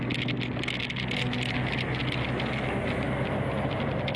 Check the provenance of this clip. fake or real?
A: real